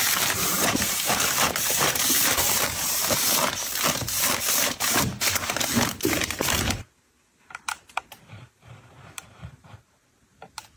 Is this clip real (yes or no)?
no